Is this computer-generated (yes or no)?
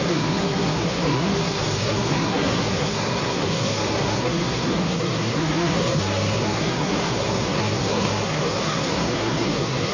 yes